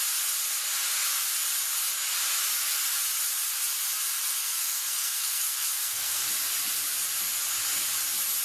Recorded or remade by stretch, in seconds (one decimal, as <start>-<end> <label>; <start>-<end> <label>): 0.0-4.4 recorded; 4.4-6.3 remade; 6.3-8.4 recorded